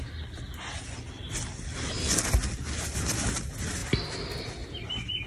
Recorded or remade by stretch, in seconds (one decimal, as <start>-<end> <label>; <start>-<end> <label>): 0.0-5.3 recorded